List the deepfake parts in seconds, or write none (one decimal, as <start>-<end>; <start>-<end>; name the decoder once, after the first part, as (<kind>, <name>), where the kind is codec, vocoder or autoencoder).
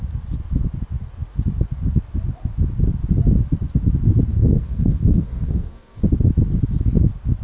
4.3-6.0 (codec, SNAC)